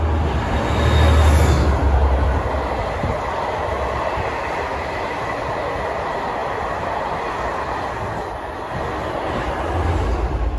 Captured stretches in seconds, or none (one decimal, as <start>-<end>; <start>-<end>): 0.0-10.6